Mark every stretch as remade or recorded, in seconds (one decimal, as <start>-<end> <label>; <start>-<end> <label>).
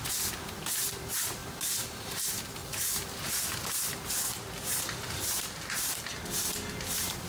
0.0-2.6 recorded; 2.6-5.7 remade; 5.7-7.3 recorded